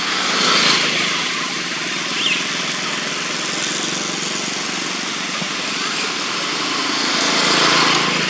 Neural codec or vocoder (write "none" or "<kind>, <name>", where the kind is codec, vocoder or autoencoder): none